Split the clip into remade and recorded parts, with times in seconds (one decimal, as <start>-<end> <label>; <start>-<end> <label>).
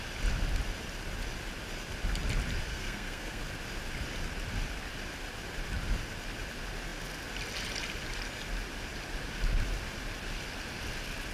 0.0-2.7 recorded; 2.7-3.4 remade; 3.4-11.3 recorded